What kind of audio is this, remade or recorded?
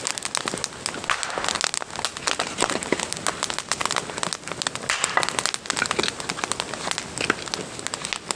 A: recorded